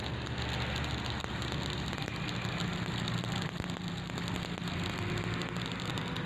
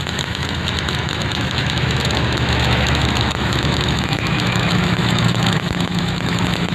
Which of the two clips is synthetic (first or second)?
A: second